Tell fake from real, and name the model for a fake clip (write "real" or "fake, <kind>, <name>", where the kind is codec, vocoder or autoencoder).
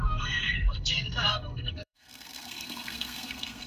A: fake, codec, SNAC